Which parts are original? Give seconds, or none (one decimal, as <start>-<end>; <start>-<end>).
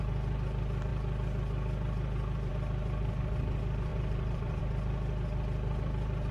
0.0-3.9; 4.6-6.3